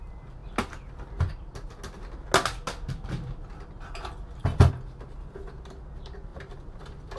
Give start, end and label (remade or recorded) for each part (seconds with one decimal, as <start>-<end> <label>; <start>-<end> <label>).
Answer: 0.0-6.3 recorded; 6.3-7.2 remade